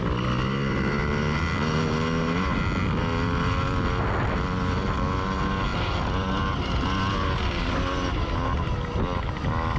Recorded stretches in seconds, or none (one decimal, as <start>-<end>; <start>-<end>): 0.0-5.7; 6.7-9.8